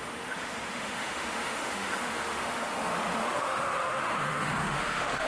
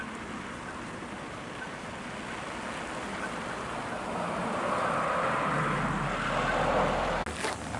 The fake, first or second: first